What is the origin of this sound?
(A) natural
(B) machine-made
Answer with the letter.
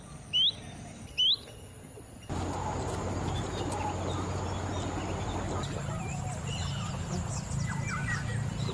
A